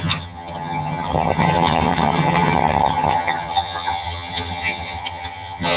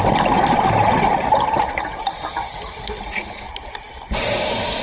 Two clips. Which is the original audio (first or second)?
second